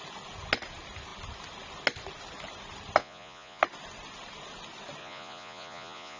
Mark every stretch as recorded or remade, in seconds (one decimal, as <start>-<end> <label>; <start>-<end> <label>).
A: 0.0-3.0 recorded; 3.0-3.6 remade; 3.6-5.0 recorded; 5.0-6.2 remade